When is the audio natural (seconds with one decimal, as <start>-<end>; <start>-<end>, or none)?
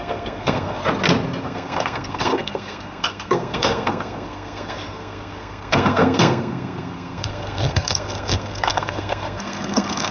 0.8-1.4